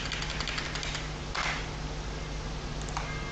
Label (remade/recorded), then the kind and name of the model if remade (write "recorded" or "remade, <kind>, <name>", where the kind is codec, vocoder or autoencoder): recorded